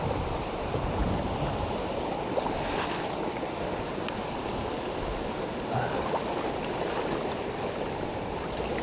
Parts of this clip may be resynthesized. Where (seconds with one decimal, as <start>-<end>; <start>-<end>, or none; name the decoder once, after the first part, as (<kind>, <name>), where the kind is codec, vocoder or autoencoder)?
0.0-1.0 (vocoder, BigVGAN v2); 3.2-8.8